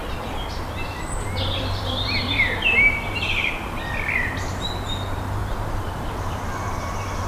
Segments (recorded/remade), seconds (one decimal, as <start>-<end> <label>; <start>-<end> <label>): 0.0-3.5 remade; 3.5-5.4 recorded; 5.4-6.1 remade; 6.1-7.3 recorded